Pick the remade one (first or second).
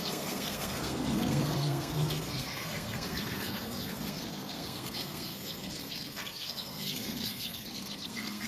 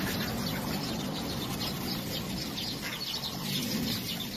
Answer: first